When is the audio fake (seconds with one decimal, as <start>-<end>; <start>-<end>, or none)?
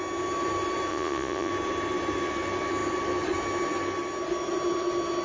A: 0.9-1.5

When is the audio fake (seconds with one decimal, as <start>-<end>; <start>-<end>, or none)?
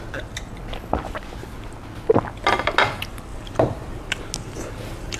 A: 3.3-4.0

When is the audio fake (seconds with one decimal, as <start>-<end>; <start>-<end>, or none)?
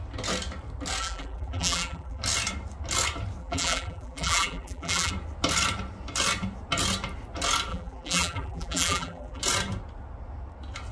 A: 1.0-2.2; 3.4-5.1; 7.7-9.4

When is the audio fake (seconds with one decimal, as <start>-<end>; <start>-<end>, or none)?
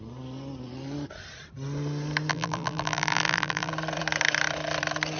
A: 2.3-3.7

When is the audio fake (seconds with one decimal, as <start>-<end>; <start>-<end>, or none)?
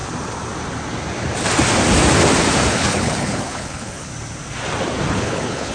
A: 2.7-4.1; 5.1-5.7